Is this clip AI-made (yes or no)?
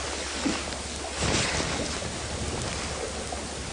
no